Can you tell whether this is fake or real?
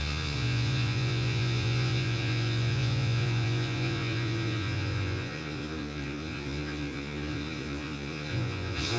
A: fake